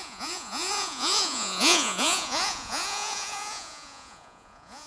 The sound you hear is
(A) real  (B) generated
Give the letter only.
B